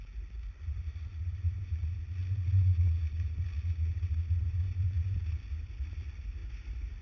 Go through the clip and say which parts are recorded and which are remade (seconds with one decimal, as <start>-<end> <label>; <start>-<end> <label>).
0.0-6.4 recorded; 6.4-7.0 remade